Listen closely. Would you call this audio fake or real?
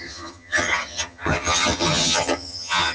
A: fake